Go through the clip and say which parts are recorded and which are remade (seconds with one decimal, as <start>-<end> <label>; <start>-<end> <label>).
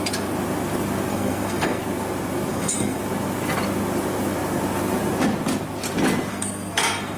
0.0-1.1 recorded; 1.1-1.8 remade; 1.8-2.5 recorded; 2.5-3.0 remade; 3.0-6.3 recorded; 6.3-7.2 remade